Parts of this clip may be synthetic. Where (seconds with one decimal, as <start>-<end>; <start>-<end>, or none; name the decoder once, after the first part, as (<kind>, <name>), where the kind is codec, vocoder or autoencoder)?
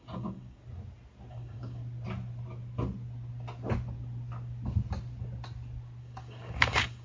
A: 0.0-0.6 (codec, DAC); 1.3-1.8; 6.0-7.0